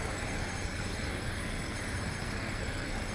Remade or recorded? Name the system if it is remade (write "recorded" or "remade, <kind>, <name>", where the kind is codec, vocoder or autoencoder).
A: remade, codec, SNAC